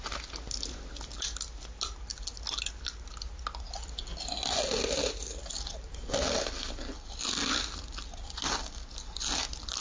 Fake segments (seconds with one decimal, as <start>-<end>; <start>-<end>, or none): none